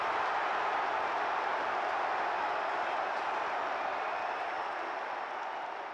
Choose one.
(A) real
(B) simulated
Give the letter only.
A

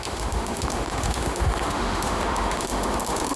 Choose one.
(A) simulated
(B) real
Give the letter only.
A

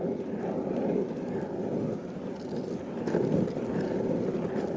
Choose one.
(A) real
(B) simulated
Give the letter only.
A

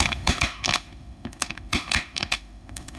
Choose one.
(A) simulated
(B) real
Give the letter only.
A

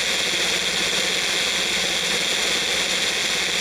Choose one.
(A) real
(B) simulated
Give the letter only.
A